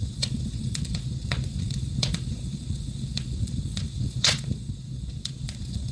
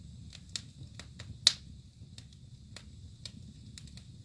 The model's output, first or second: first